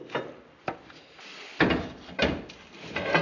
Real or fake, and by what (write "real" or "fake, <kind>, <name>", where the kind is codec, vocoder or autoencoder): real